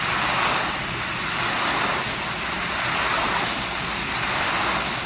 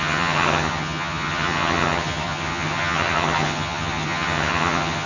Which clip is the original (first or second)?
first